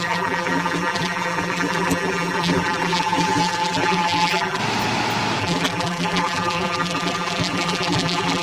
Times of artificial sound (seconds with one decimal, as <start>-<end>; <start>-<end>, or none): 0.0-4.6; 5.4-8.4